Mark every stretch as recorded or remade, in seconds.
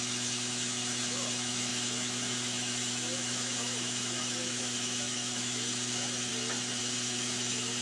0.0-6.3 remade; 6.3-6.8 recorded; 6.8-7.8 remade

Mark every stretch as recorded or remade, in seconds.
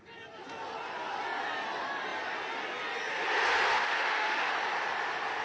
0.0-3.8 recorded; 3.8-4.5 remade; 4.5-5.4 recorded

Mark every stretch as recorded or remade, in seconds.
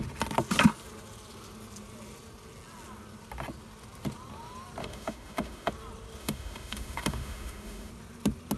0.0-4.8 recorded; 4.8-5.7 remade; 5.7-6.2 recorded; 6.2-7.9 remade; 7.9-8.6 recorded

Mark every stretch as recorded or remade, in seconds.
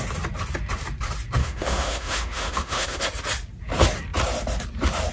0.0-1.4 recorded; 1.4-3.0 remade; 3.0-5.1 recorded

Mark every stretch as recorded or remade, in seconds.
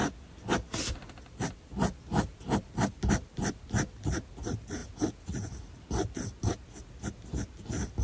0.0-8.0 recorded